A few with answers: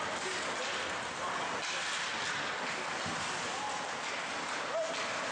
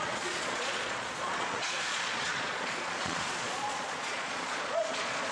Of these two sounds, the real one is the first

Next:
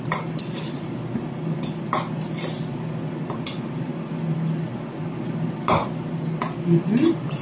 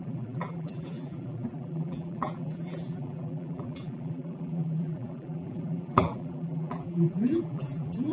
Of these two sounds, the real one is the first